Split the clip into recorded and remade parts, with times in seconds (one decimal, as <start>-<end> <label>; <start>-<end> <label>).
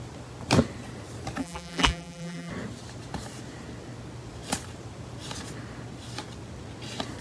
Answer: 0.0-1.4 recorded; 1.4-2.5 remade; 2.5-7.2 recorded